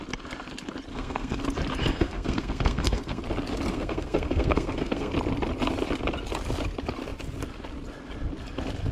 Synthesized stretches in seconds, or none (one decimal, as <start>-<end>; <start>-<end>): 0.9-1.4; 1.8-3.2; 3.7-5.1